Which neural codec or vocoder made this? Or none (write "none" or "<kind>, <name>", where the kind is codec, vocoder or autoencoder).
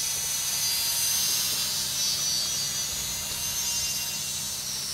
none